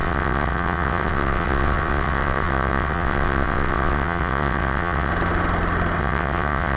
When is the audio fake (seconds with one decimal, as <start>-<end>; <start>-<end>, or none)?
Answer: 0.0-5.1; 6.0-6.8